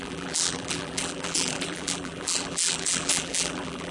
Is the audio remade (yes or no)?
yes